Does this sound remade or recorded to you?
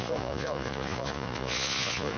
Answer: remade